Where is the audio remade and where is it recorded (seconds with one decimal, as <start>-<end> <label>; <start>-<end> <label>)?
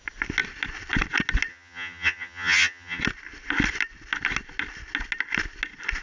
0.0-1.5 recorded; 1.5-3.0 remade; 3.0-6.0 recorded